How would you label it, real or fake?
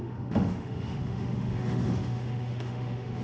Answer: fake